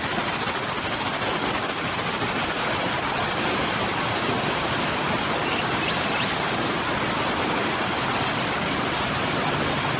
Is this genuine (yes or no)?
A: yes